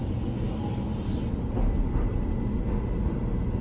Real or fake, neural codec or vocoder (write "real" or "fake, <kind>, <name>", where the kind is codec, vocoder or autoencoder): real